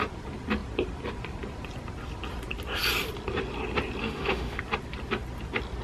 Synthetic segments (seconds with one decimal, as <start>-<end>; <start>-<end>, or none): 4.0-4.6